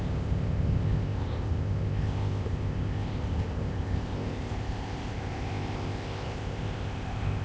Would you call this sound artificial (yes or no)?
yes